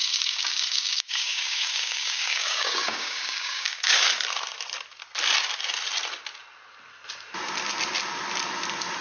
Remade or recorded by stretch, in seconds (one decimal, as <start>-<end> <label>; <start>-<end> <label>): 0.0-4.1 remade; 4.1-9.0 recorded